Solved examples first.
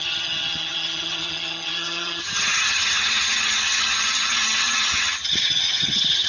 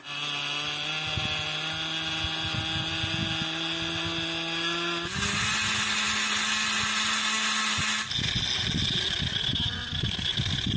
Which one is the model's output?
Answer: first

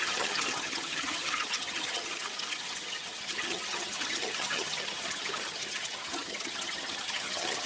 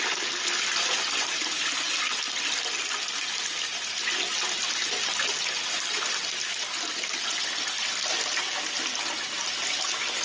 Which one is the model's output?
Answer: first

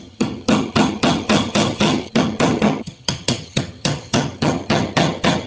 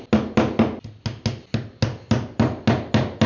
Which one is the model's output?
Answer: first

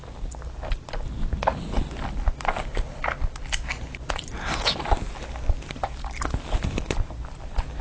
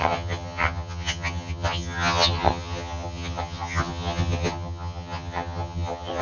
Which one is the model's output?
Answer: second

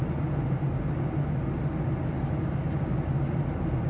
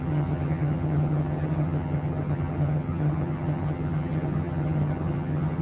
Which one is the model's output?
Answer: second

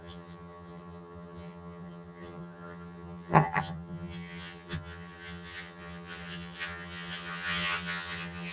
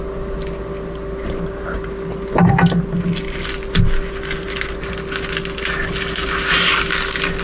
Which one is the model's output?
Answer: first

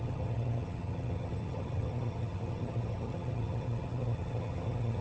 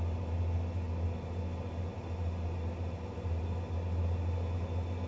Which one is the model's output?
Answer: first